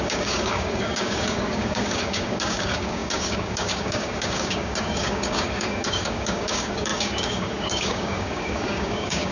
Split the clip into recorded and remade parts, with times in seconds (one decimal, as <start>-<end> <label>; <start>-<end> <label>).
0.0-9.3 remade